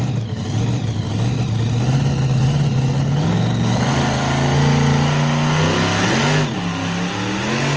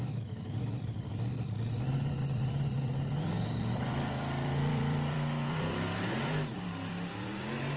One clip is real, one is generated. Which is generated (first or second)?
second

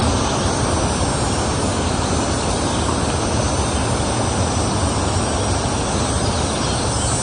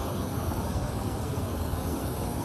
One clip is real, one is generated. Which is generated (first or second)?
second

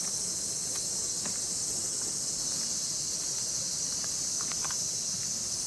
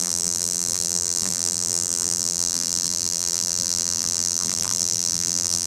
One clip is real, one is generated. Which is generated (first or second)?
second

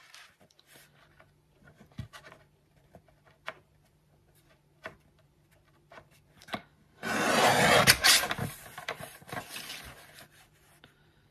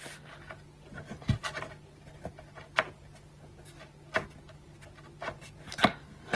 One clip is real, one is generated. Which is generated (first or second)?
first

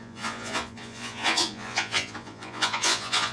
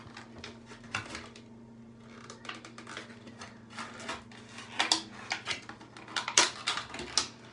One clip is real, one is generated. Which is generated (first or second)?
first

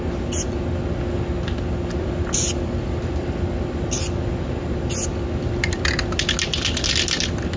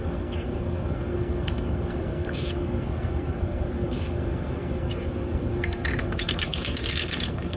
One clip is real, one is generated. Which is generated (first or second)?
second